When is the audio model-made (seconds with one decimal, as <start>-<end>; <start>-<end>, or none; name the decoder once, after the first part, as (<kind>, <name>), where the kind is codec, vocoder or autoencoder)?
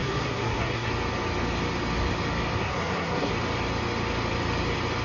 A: 0.0-0.9 (codec, SNAC); 2.6-3.3